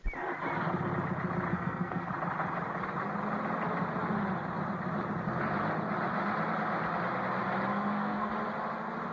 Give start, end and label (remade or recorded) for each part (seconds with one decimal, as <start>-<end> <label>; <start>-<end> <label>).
0.0-1.5 recorded; 1.5-2.1 remade; 2.1-7.7 recorded; 7.7-8.3 remade; 8.3-9.1 recorded